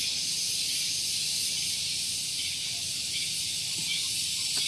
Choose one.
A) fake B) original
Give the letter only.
B